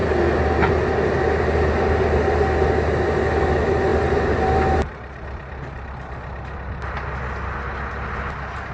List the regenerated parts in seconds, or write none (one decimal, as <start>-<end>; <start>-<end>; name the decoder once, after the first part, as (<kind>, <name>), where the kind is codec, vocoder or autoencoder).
none